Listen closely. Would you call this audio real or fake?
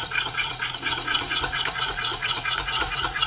fake